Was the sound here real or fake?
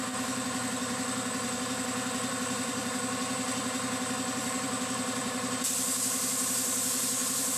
fake